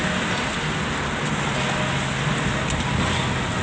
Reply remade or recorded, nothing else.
recorded